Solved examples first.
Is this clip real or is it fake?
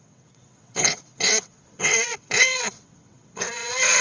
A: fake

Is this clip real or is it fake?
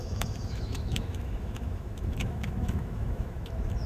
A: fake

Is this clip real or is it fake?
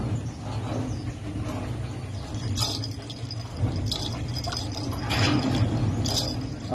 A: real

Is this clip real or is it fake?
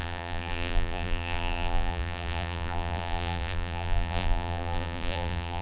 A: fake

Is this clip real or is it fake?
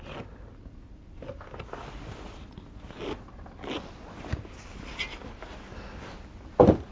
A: real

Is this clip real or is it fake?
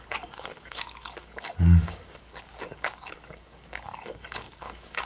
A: fake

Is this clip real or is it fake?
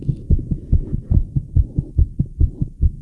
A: fake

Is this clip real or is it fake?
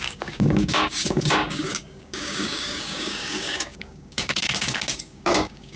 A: fake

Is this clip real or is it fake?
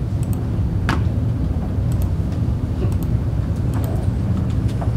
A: real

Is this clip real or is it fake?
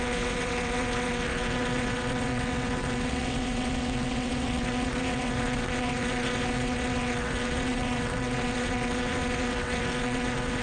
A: fake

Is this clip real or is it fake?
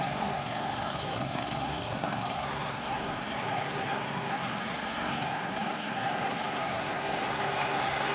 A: fake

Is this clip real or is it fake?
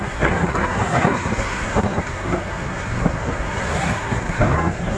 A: fake